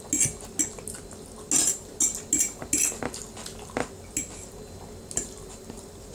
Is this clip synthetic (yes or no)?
no